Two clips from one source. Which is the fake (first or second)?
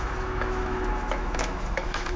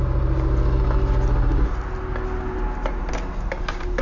first